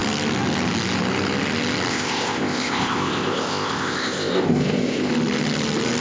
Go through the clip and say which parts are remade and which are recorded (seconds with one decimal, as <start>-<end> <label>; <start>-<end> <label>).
0.0-1.9 recorded; 1.9-5.1 remade; 5.1-6.0 recorded